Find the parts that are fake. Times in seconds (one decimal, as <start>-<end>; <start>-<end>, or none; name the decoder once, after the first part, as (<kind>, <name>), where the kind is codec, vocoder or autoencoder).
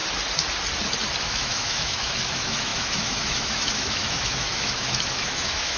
1.2-5.8 (autoencoder, DAC-VAE)